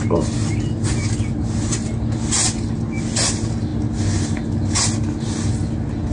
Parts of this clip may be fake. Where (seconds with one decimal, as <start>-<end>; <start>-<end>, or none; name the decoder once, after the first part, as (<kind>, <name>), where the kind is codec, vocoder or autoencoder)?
none